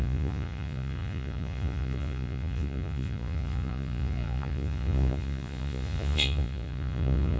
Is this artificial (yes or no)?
yes